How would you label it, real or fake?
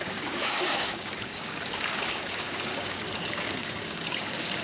fake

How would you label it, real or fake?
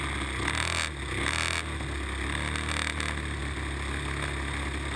real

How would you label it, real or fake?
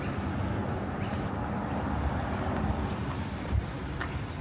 real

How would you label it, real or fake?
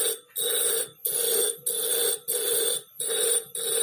real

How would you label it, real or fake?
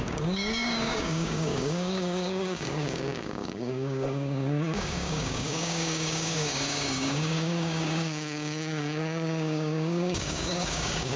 fake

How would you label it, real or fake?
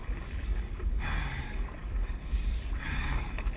fake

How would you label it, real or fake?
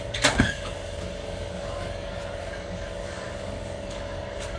fake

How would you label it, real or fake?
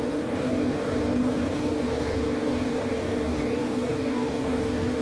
fake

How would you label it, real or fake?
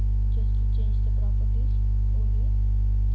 real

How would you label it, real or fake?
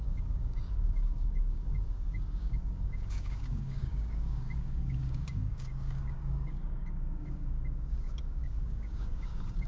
fake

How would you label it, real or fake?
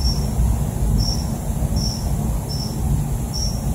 real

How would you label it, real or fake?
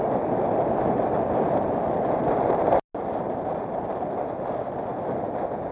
real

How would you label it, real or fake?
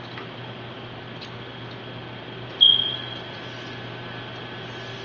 real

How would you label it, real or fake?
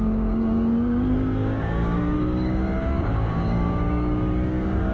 fake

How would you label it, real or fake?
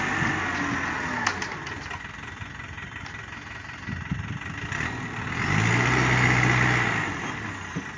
real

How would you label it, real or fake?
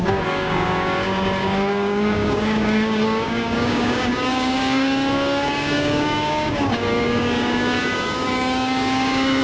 fake